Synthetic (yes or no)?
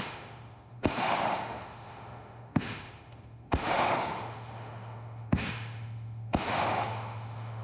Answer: yes